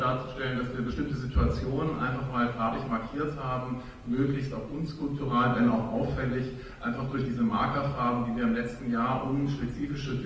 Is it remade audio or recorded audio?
recorded